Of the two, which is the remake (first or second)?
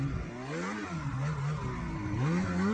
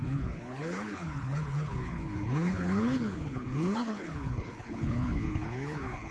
second